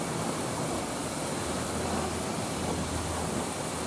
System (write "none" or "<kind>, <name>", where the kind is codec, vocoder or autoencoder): none